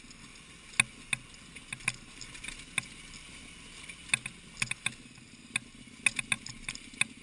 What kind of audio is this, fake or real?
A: real